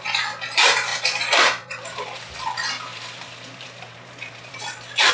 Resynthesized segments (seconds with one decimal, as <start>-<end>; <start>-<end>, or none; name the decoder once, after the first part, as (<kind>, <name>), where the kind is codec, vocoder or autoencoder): 0.9-2.3 (vocoder, BigVGAN v2); 2.9-5.1